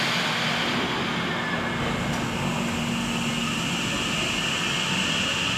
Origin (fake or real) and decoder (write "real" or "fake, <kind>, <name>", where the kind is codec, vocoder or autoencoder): real